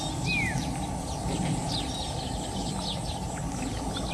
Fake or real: real